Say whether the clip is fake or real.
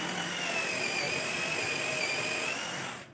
real